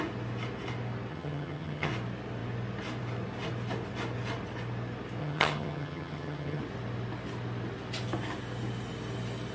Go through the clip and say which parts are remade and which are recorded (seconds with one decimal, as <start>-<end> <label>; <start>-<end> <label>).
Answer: 0.0-1.1 recorded; 1.1-1.9 remade; 1.9-5.2 recorded; 5.2-6.6 remade; 6.6-9.5 recorded